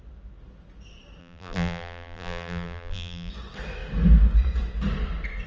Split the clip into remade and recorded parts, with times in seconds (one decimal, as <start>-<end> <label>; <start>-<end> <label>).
0.0-1.2 recorded; 1.2-3.3 remade; 3.3-5.5 recorded